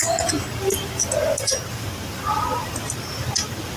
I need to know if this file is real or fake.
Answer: real